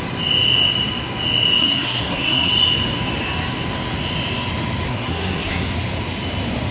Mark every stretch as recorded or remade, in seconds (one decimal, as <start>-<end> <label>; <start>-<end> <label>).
0.0-1.6 recorded; 1.6-2.5 remade; 2.5-4.9 recorded; 4.9-5.7 remade; 5.7-6.7 recorded